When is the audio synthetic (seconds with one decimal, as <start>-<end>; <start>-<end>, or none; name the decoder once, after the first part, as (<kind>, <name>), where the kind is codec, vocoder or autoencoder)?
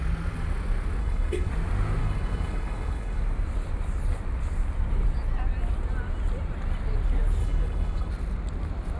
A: 1.0-1.5 (codec, HILCodec); 2.0-3.2; 7.4-8.1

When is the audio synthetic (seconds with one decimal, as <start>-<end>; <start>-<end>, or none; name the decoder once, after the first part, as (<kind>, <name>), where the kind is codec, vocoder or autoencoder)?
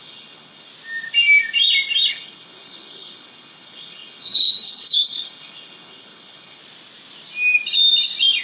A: 0.0-0.7 (codec, HILCodec); 2.1-6.6